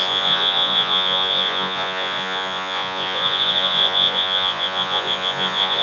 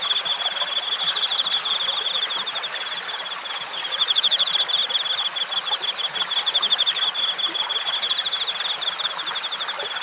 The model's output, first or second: first